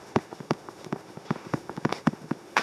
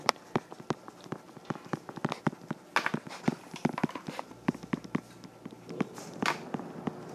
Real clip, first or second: second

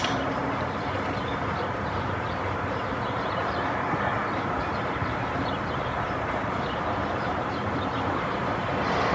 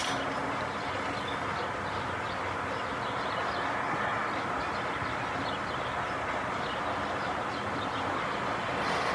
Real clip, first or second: second